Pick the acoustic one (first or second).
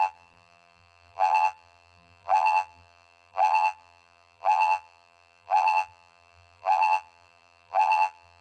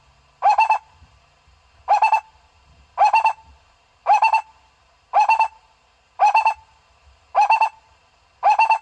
second